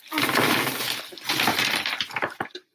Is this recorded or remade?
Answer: recorded